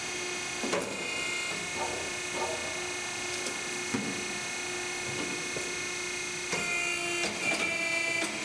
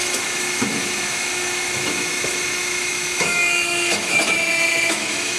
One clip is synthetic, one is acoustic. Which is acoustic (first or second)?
first